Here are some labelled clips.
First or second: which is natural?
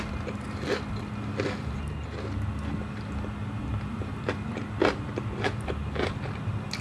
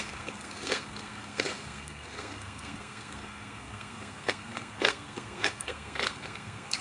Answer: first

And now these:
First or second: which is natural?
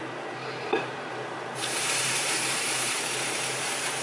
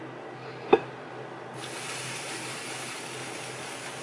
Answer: second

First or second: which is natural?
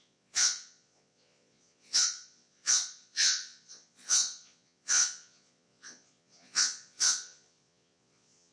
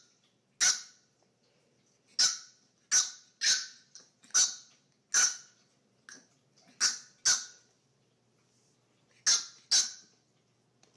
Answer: second